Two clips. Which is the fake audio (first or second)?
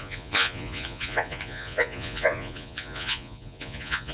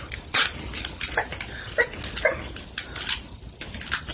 first